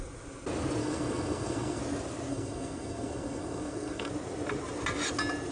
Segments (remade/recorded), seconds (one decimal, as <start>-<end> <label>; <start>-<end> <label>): 0.0-0.8 recorded; 0.8-1.8 remade; 1.8-2.3 recorded; 2.3-4.1 remade; 4.1-5.5 recorded